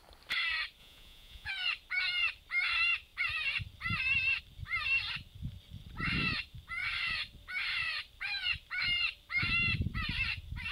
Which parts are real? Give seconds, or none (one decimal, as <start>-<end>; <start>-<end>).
0.0-0.8; 1.5-10.7